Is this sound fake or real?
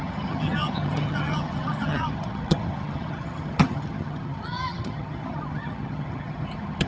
fake